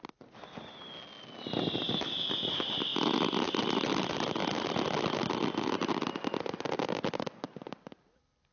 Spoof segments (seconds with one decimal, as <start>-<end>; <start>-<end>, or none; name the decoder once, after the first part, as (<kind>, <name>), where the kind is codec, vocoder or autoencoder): none